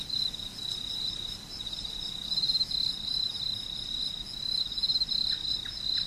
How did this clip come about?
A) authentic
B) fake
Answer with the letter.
A